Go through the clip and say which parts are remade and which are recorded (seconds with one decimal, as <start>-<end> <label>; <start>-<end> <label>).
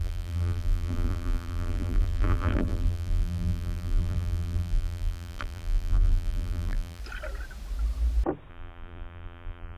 0.0-7.0 remade; 7.0-8.5 recorded; 8.5-9.8 remade